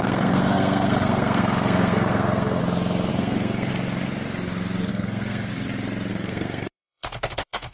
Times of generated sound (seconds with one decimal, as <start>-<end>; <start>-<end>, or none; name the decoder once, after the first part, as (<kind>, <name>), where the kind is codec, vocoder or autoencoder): 0.0-2.6 (codec, SNAC); 3.1-3.7; 4.9-5.5; 6.1-7.7